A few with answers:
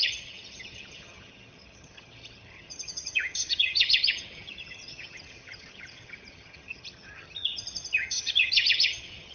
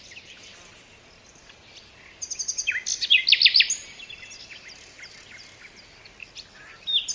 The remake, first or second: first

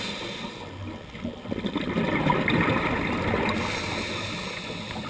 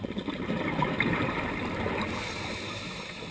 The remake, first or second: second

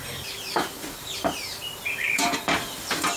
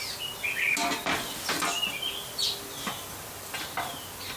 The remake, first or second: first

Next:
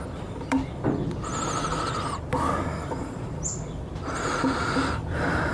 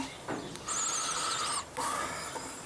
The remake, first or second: first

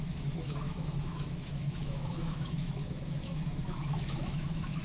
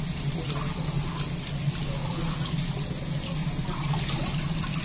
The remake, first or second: first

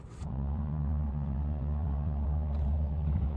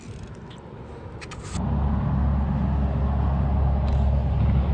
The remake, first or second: first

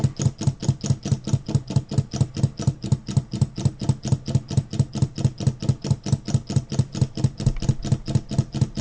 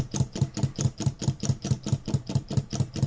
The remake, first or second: second